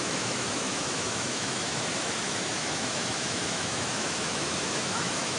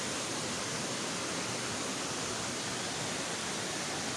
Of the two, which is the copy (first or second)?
first